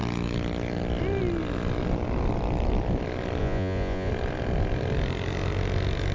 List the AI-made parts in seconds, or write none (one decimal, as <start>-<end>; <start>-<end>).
3.4-4.1